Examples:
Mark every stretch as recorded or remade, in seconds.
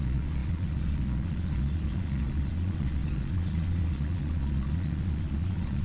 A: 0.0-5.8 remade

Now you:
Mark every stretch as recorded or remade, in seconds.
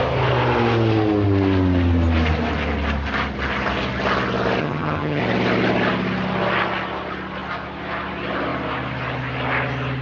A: 0.0-4.6 recorded; 4.6-5.2 remade; 5.2-10.0 recorded